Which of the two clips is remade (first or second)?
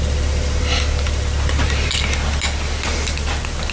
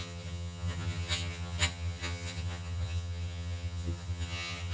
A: second